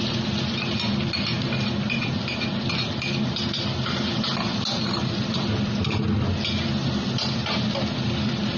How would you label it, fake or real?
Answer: real